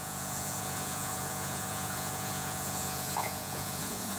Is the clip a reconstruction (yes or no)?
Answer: yes